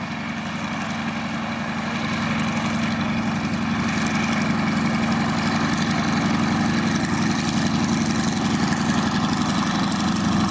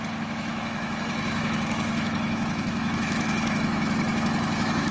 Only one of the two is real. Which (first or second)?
first